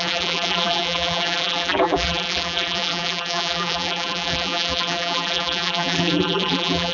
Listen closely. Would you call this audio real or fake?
fake